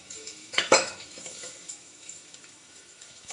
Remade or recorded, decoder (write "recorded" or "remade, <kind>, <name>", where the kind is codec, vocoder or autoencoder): remade, autoencoder, DAC-VAE